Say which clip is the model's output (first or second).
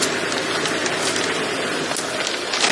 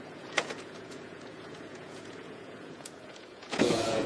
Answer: second